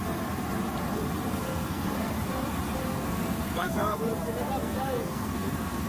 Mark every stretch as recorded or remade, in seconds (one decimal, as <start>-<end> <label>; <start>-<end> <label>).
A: 0.0-1.3 recorded; 1.3-2.1 remade; 2.1-2.9 recorded; 2.9-4.1 remade; 4.1-4.6 recorded; 4.6-5.9 remade